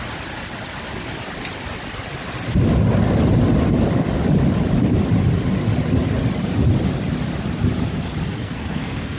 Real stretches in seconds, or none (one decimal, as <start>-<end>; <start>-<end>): 0.0-8.4